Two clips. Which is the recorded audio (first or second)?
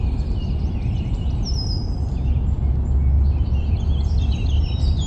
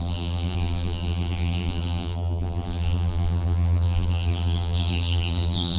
first